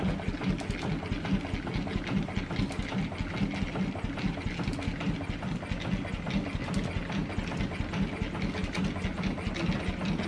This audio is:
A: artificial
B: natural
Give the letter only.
B